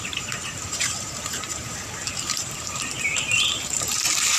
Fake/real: fake